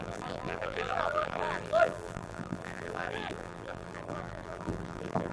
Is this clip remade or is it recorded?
remade